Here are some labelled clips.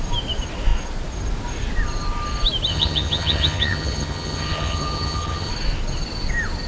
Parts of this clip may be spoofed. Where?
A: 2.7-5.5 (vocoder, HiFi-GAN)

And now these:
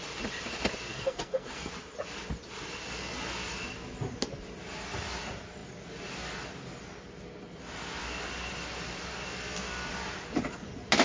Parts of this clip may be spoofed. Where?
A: 0.9-1.7 (codec, SNAC)

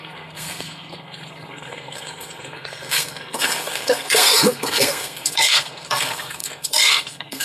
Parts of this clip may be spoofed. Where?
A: 0.0-7.4 (codec, SNAC)

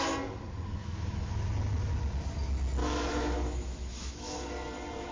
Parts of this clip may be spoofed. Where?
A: 0.8-1.4 (autoencoder, DAC-VAE); 2.8-4.5

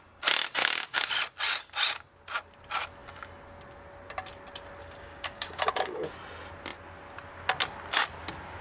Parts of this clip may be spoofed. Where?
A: 0.6-1.1 (codec, DAC); 4.8-6.1

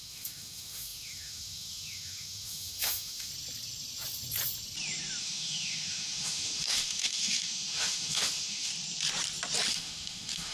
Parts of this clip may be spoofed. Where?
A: 0.0-3.3 (autoencoder, DAC-VAE); 5.2-8.7; 9.7-10.5